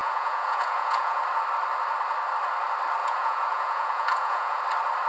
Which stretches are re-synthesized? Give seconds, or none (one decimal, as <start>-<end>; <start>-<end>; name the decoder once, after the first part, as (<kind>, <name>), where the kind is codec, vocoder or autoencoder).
0.0-1.2 (vocoder, Vocos); 3.0-4.6